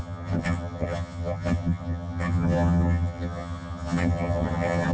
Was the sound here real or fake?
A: fake